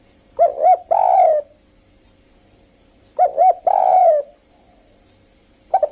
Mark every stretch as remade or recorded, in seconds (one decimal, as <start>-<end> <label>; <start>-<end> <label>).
0.0-0.5 remade; 0.5-1.9 recorded; 1.9-4.0 remade; 4.0-5.5 recorded; 5.5-5.9 remade